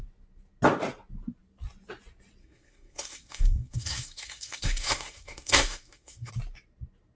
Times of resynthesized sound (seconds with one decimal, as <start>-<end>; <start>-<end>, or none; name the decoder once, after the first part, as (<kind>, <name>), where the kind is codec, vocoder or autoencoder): 2.4-6.3 (codec, SNAC)